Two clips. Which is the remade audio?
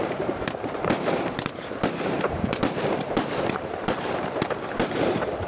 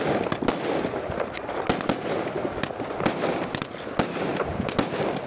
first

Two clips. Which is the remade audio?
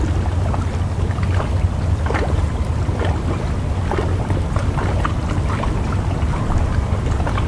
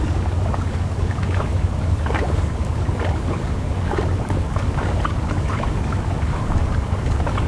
second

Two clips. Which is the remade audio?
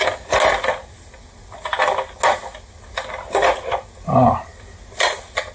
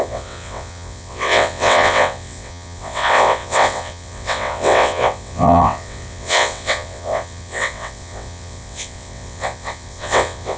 second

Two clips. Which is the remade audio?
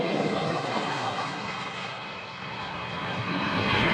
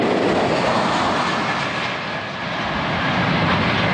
first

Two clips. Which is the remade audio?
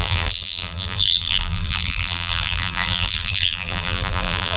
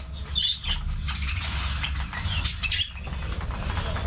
first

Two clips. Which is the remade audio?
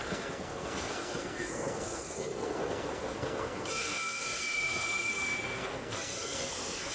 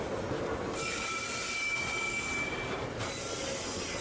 first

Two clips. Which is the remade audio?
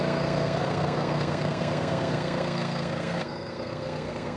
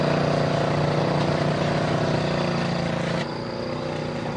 first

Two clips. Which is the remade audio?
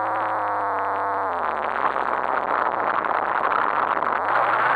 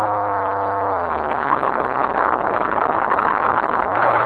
second